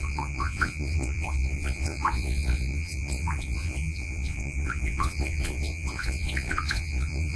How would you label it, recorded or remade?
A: remade